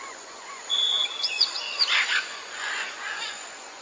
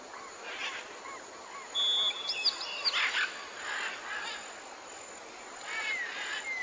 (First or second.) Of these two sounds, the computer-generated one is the first